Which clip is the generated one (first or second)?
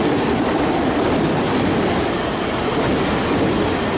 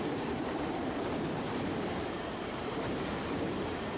second